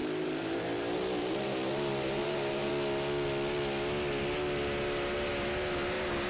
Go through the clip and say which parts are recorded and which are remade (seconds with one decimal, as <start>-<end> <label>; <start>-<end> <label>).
0.0-2.7 remade; 2.7-6.3 recorded